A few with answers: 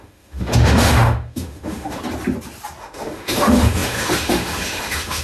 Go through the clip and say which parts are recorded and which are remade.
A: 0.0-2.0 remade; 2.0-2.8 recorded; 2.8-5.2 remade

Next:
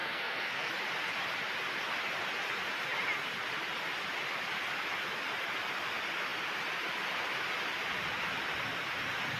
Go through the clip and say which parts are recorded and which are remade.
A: 0.0-0.7 remade; 0.7-9.4 recorded

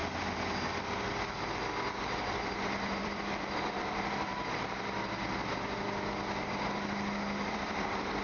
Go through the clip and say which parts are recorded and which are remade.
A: 0.0-2.3 recorded; 2.3-4.3 remade; 4.3-7.5 recorded; 7.5-8.2 remade

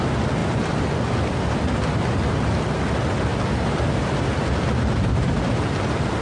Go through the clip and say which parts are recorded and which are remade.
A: 0.0-6.2 recorded

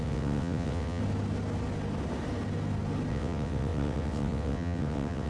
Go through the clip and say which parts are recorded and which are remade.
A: 0.0-1.0 remade; 1.0-3.1 recorded; 3.1-5.3 remade